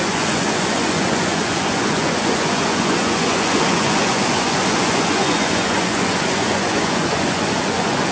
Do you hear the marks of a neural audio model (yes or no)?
yes